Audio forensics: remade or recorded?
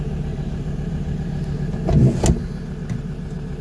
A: recorded